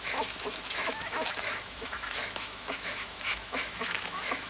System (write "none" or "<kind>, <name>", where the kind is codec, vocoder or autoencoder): autoencoder, DAC-VAE